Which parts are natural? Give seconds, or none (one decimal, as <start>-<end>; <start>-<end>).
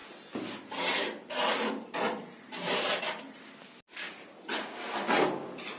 0.0-5.8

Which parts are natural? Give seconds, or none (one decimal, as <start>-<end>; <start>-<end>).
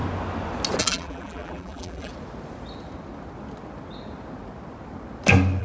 0.0-0.8; 2.1-5.6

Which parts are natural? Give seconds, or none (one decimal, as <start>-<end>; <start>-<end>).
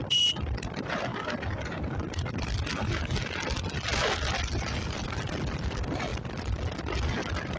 0.0-7.6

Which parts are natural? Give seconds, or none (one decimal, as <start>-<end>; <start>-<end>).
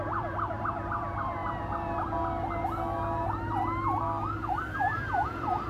1.4-4.5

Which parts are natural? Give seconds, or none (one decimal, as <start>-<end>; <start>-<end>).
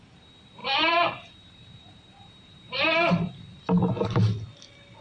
0.0-0.6; 3.6-5.0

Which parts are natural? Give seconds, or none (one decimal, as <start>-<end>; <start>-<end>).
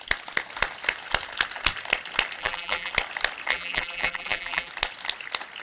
0.0-2.4; 2.9-3.5; 4.7-5.6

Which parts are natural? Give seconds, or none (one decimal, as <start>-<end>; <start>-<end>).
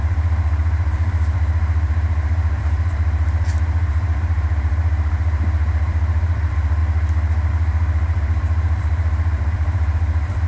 6.8-7.5